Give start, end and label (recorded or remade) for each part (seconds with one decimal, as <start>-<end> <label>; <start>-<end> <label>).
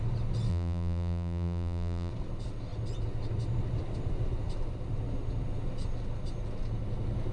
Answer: 0.0-0.5 recorded; 0.5-2.1 remade; 2.1-7.3 recorded